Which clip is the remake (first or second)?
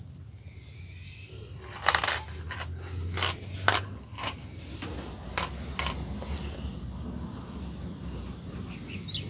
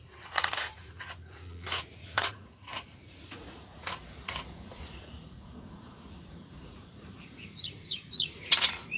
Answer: second